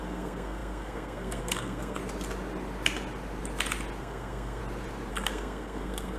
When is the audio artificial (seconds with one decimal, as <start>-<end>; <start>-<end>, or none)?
0.0-2.0; 4.0-4.6; 5.1-6.2